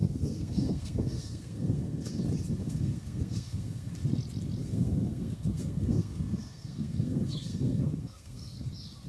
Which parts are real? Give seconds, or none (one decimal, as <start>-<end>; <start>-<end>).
2.2-2.6; 3.9-4.6; 8.7-9.1